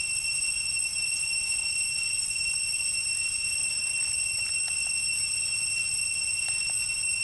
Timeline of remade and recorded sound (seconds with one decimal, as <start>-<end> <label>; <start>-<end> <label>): 0.0-7.2 recorded